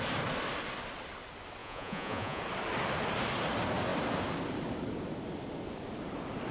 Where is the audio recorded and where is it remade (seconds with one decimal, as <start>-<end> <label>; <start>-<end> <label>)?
0.0-1.6 recorded; 1.6-2.4 remade; 2.4-6.5 recorded